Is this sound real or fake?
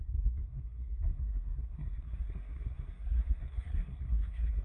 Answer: fake